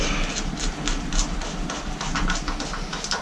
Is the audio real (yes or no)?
yes